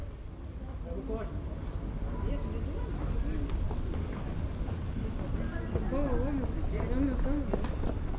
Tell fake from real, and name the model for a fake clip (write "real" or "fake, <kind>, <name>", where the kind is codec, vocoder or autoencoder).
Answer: real